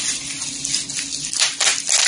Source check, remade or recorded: recorded